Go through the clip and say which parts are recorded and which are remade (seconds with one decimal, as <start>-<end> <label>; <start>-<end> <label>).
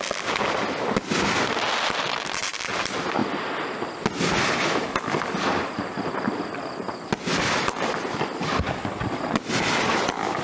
0.0-10.4 recorded